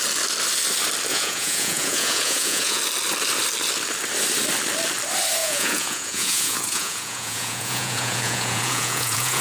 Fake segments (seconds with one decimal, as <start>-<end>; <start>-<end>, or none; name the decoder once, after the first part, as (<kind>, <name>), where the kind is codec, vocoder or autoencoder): 1.1-2.8 (vocoder, Vocos); 5.4-9.4